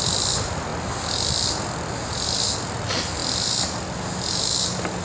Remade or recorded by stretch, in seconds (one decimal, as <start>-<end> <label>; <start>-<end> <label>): 0.0-5.0 recorded